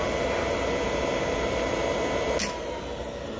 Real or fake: real